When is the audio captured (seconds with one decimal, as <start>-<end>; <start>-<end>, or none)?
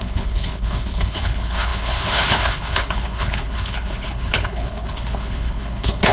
none